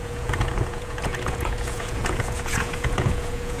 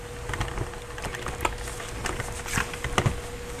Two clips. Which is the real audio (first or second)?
second